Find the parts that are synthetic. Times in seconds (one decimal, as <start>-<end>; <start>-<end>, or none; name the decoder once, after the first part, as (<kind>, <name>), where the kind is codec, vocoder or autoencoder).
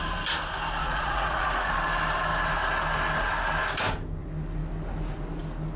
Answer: 0.8-1.7 (vocoder, Vocos)